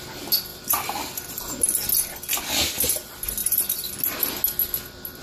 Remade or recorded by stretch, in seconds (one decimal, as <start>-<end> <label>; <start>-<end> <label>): 0.0-0.5 recorded; 0.5-1.3 remade; 1.3-3.4 recorded; 3.4-3.9 remade; 3.9-5.2 recorded